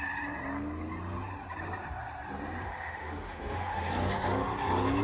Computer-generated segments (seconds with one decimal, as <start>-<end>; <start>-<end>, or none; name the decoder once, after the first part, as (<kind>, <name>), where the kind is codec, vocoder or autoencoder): 2.6-3.9 (autoencoder, DAC-VAE)